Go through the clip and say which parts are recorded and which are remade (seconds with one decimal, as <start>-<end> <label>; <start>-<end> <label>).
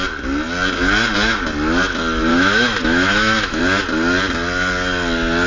0.0-2.3 recorded; 2.3-3.6 remade; 3.6-5.5 recorded